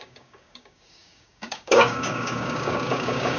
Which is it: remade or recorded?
remade